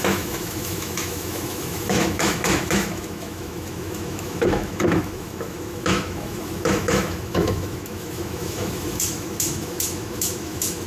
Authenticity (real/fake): fake